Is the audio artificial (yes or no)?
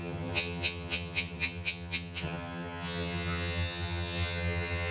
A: yes